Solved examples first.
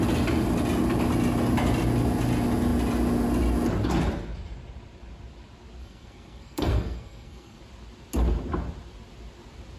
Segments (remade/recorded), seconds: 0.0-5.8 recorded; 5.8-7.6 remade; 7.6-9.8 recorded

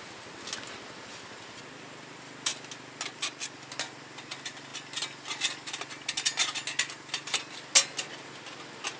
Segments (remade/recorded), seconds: 0.0-9.0 recorded